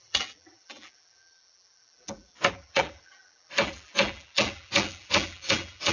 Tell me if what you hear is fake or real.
fake